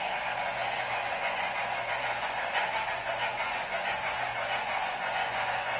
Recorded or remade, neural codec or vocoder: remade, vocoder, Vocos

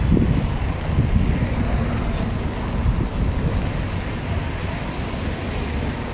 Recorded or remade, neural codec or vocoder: recorded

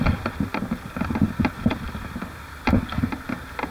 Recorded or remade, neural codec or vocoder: recorded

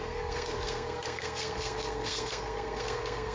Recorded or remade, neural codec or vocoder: remade, codec, SNAC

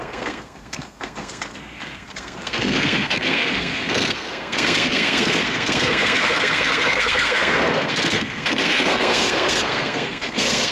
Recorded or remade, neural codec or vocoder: remade, codec, SNAC